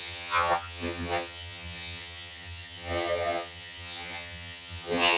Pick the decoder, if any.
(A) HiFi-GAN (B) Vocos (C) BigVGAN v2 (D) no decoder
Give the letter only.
A